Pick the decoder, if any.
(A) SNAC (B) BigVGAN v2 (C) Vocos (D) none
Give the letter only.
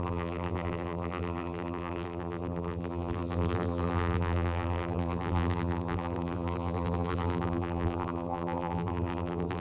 B